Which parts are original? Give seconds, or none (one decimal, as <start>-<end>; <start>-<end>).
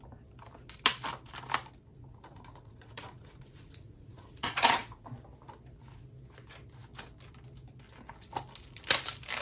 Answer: 0.0-1.9; 5.0-9.4